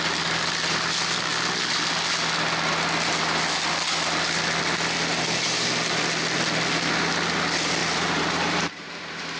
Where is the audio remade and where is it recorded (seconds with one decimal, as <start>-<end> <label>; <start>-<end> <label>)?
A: 0.0-7.8 recorded; 7.8-9.4 remade